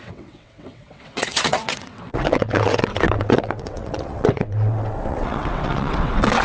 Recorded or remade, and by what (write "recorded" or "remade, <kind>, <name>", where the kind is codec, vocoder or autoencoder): remade, vocoder, WaveNeXt